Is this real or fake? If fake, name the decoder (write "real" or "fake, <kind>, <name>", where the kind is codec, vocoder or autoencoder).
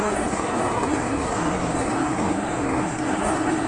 fake, codec, SNAC